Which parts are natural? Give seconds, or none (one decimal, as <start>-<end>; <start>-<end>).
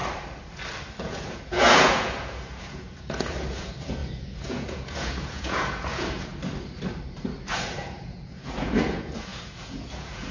0.0-1.0; 6.3-7.5